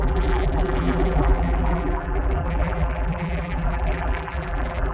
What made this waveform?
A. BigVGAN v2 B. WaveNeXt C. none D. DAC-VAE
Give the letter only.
A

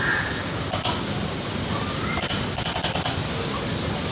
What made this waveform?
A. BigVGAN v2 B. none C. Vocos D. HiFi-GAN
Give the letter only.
B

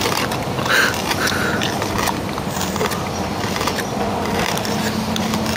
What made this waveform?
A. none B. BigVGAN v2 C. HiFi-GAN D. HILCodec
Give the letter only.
B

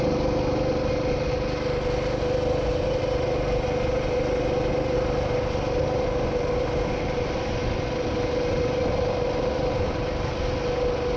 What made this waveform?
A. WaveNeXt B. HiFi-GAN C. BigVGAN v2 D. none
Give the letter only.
D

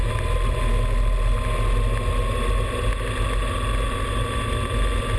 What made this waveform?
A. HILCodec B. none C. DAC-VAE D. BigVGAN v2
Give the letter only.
B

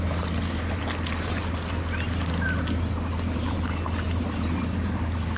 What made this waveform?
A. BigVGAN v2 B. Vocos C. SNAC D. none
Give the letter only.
D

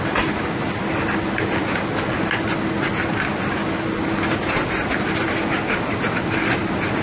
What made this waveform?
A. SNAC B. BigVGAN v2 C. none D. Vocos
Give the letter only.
C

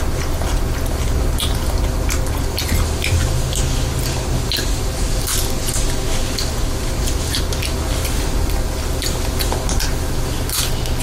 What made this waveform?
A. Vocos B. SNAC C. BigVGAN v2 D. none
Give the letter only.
D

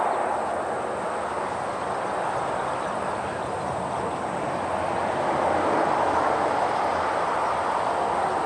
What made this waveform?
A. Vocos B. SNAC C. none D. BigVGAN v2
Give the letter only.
C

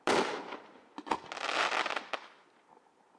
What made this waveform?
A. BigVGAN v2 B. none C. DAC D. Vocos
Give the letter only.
A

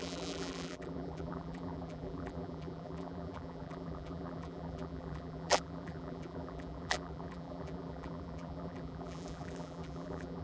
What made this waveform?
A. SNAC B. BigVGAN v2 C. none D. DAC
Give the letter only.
B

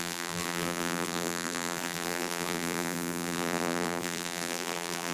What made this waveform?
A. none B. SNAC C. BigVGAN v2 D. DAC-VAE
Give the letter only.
C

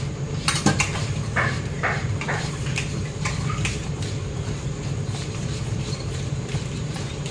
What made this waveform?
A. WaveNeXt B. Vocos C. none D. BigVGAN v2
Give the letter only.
D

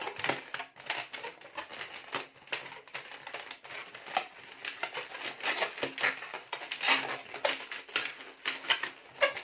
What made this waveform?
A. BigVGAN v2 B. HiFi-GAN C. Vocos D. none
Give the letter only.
D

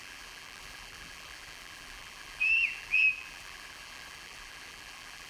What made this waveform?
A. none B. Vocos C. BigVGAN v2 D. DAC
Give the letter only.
C